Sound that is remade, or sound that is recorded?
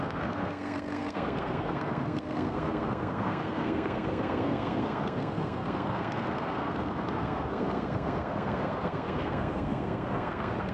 remade